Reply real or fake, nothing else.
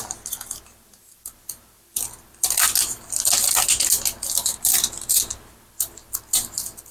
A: real